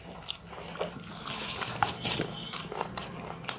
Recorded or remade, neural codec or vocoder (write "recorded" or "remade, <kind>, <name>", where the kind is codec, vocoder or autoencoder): recorded